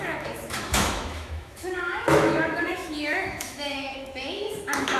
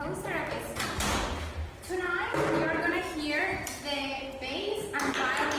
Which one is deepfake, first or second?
first